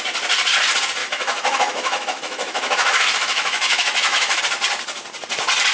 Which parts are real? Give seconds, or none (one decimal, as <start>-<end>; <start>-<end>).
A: 0.0-1.0; 4.4-5.7